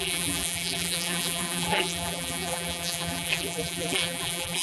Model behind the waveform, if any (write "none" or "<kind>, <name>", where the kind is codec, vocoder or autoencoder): vocoder, BigVGAN v2